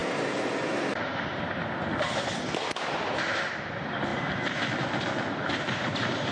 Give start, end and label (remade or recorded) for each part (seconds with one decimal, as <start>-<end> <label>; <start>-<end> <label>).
0.0-6.3 remade

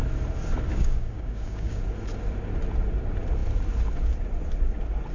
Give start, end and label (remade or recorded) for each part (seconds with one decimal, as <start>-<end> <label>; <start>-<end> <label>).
0.0-0.7 recorded; 0.7-1.8 remade; 1.8-5.1 recorded

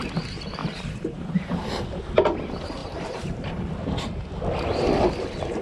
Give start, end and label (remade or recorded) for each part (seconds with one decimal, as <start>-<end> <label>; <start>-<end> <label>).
0.0-0.6 recorded; 0.6-1.7 remade; 1.7-2.8 recorded; 2.8-3.5 remade; 3.5-5.6 recorded

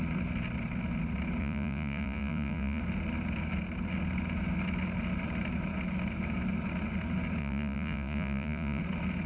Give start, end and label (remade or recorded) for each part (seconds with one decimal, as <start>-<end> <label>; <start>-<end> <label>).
0.0-1.4 recorded; 1.4-2.8 remade; 2.8-7.4 recorded; 7.4-8.8 remade; 8.8-9.3 recorded

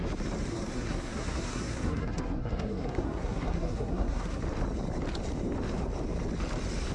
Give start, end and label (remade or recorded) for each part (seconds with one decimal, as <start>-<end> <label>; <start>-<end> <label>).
0.0-0.5 recorded; 0.5-4.4 remade; 4.4-6.9 recorded

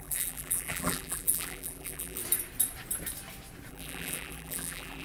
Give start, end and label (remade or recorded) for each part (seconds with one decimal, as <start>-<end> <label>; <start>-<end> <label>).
0.0-2.2 remade; 2.2-3.7 recorded; 3.7-5.0 remade

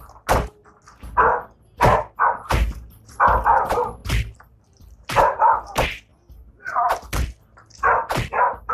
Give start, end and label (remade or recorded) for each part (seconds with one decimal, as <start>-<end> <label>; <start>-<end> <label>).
0.0-4.0 recorded; 4.0-5.2 remade; 5.2-8.7 recorded